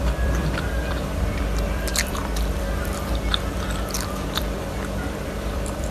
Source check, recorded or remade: remade